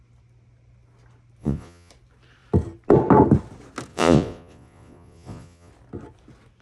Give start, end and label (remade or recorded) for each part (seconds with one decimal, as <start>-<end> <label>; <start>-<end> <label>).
0.0-1.4 recorded; 1.4-1.9 remade; 1.9-3.9 recorded; 3.9-5.7 remade; 5.7-6.6 recorded